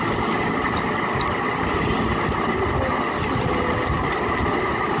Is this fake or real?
real